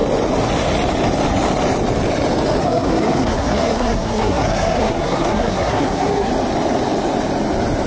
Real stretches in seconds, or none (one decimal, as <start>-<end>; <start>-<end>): 0.0-2.6; 6.3-7.9